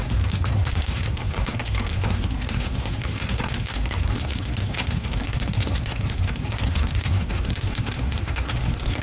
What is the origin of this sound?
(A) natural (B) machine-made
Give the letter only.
B